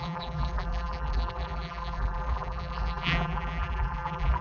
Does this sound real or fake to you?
fake